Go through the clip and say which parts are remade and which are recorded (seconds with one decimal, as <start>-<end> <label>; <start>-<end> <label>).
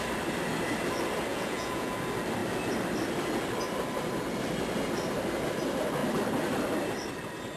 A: 0.0-1.3 recorded; 1.3-1.9 remade; 1.9-7.6 recorded